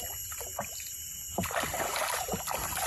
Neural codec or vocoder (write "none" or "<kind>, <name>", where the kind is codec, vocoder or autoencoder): vocoder, BigVGAN v2